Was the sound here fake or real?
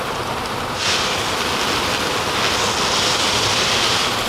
real